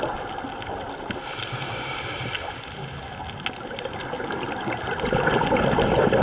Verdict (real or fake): real